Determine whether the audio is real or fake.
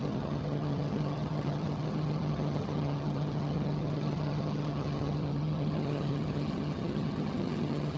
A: fake